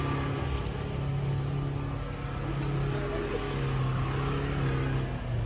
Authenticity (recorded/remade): recorded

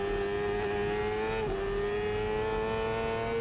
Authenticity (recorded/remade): recorded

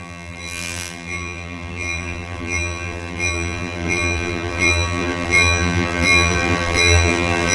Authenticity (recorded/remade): remade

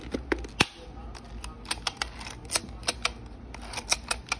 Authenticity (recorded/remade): recorded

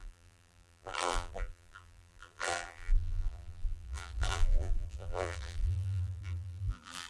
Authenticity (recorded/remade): remade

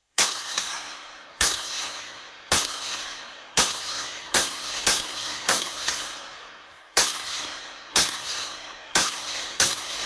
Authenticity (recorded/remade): remade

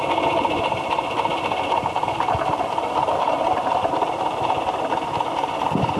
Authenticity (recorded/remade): recorded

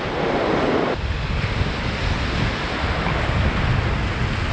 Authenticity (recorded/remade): recorded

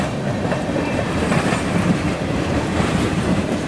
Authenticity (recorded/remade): remade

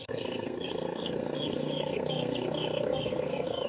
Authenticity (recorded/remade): remade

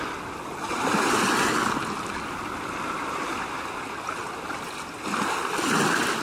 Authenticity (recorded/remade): recorded